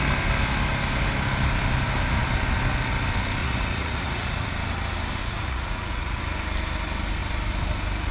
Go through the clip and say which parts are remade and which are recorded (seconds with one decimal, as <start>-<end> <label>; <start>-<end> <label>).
0.0-3.4 recorded; 3.4-4.5 remade; 4.5-5.2 recorded; 5.2-6.2 remade; 6.2-8.1 recorded